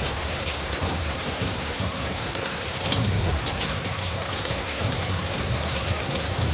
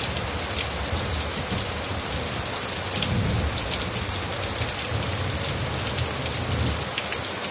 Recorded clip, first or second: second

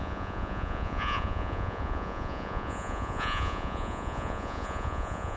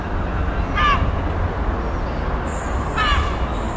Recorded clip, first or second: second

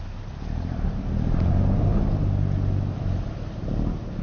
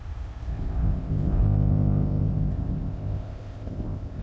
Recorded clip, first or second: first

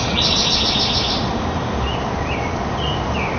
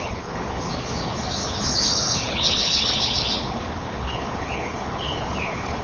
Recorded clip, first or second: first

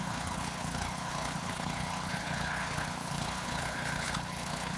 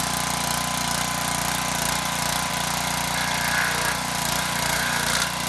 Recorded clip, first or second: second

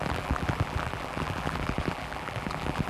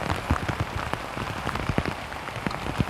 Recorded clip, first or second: second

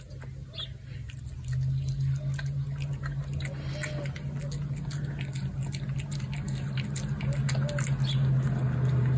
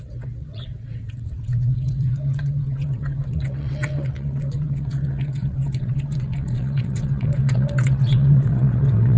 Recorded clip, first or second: first